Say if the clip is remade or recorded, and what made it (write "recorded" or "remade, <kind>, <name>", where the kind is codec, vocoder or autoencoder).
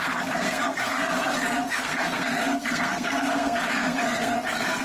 remade, codec, SNAC